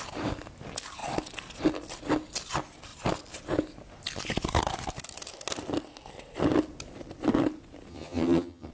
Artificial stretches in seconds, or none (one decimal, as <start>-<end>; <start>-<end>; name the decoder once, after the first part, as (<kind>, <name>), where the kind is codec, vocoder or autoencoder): 7.9-8.7 (vocoder, HiFi-GAN)